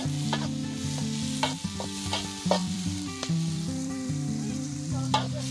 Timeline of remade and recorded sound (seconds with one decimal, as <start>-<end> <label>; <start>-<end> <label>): 0.0-2.6 recorded; 2.6-5.5 remade